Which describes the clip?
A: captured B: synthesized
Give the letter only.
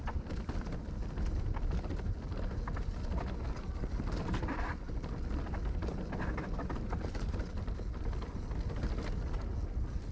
A